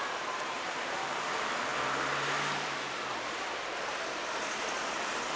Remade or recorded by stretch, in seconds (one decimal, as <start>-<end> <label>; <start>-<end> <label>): 0.0-1.7 remade; 1.7-3.1 recorded; 3.1-5.4 remade